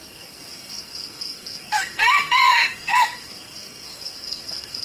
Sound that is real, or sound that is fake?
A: fake